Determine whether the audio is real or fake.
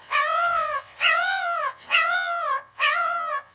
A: fake